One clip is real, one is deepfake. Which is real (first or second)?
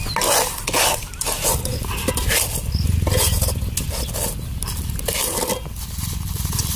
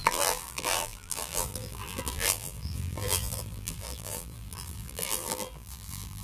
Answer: first